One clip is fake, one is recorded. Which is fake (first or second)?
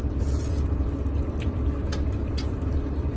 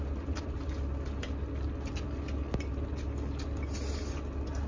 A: first